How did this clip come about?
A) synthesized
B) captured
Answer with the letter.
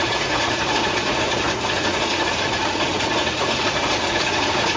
A